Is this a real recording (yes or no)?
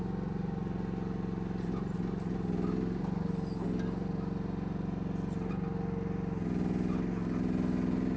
yes